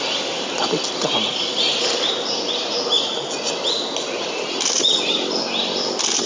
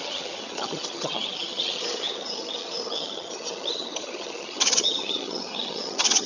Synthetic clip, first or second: second